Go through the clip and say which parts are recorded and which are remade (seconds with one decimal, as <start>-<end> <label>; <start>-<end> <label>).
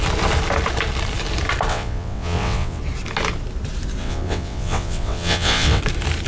0.0-1.7 recorded; 1.7-2.8 remade; 2.8-4.0 recorded; 4.0-5.8 remade; 5.8-6.3 recorded